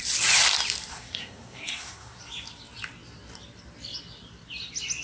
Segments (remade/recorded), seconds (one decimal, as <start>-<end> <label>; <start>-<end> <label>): 0.0-0.9 recorded; 0.9-2.2 remade; 2.2-5.0 recorded